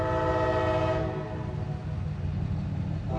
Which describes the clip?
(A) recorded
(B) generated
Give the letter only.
A